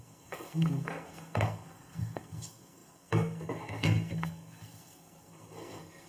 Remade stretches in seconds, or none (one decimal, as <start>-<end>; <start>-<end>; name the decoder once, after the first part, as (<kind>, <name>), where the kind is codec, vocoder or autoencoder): 0.0-6.1 (codec, SNAC)